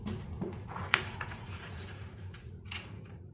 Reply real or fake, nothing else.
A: fake